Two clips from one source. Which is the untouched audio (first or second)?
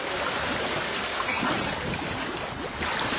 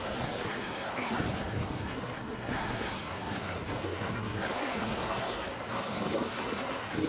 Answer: first